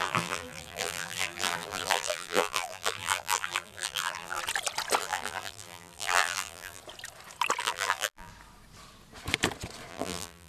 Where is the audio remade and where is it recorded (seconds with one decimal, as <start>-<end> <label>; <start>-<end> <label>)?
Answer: 0.0-4.4 remade; 4.4-5.0 recorded; 5.0-6.8 remade; 6.8-7.6 recorded; 7.6-8.3 remade; 8.3-9.9 recorded; 9.9-10.5 remade